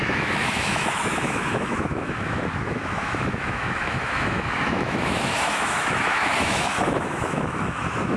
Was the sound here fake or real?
fake